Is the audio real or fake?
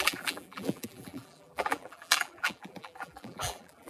fake